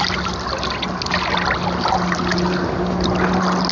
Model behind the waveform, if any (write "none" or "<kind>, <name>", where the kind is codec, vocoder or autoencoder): none